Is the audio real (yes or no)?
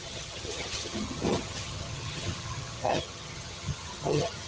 no